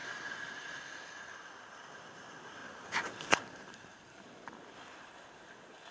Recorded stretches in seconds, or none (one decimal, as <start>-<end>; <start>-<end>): 0.8-2.6; 3.9-5.9